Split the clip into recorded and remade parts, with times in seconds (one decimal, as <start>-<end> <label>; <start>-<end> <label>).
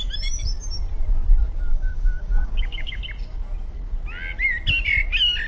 0.0-1.7 recorded; 1.7-3.0 remade; 3.0-5.5 recorded